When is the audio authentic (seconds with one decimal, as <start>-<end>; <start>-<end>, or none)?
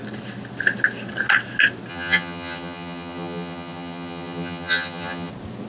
0.0-1.9; 5.3-5.7